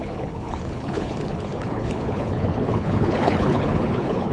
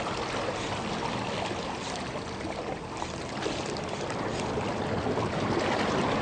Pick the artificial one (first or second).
first